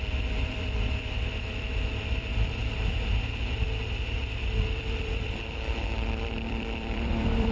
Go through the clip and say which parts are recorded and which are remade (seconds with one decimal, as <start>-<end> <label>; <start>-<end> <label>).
0.0-2.6 remade; 2.6-4.2 recorded; 4.2-7.5 remade